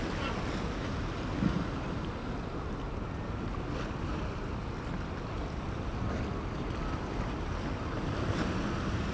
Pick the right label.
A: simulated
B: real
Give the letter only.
B